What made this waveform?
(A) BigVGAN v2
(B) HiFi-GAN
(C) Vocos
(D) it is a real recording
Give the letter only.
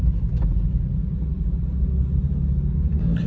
D